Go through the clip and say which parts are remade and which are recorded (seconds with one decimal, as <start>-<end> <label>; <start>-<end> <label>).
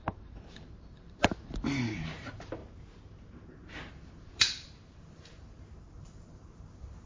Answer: 0.0-2.6 remade; 2.6-3.9 recorded; 3.9-7.1 remade